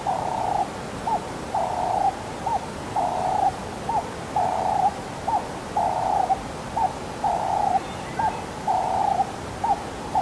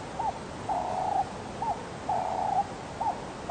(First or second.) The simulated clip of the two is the first